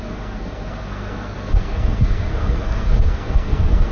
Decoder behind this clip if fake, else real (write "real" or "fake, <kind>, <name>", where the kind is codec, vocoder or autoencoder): fake, codec, SNAC